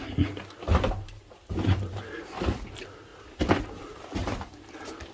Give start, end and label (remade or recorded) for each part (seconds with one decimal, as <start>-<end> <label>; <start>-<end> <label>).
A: 0.0-0.7 recorded; 0.7-2.4 remade; 2.4-3.1 recorded; 3.1-4.0 remade; 4.0-5.1 recorded